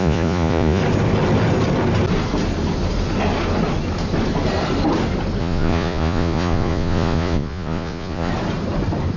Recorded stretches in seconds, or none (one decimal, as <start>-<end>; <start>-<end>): 0.8-5.4; 8.3-9.2